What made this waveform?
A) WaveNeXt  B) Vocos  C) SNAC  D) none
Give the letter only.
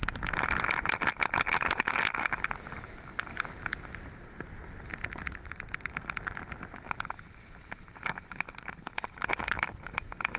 D